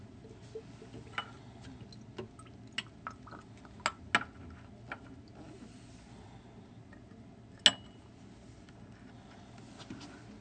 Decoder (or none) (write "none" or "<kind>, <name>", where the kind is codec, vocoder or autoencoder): none